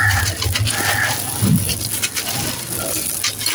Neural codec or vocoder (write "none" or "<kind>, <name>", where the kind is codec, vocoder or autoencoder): none